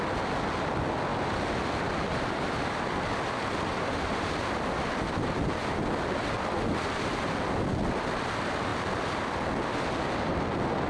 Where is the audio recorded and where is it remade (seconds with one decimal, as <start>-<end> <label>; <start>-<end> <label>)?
0.0-10.9 recorded